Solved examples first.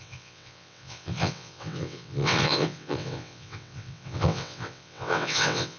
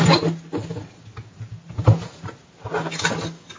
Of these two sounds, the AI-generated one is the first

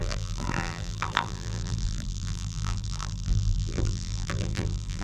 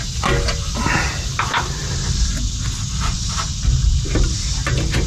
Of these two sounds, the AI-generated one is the first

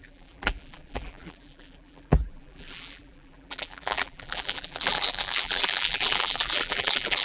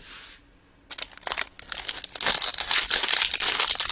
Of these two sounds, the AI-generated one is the first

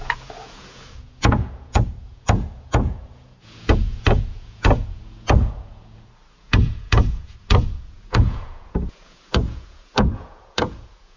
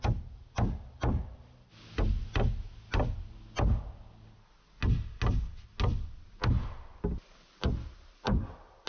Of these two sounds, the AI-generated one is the first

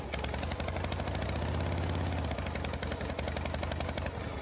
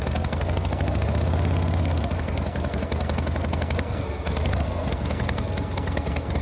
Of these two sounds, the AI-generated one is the second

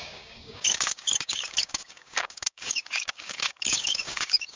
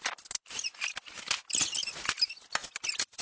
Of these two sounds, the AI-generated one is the first